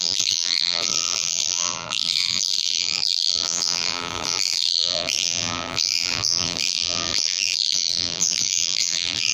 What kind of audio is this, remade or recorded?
remade